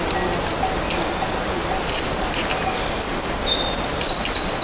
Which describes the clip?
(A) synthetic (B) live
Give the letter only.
B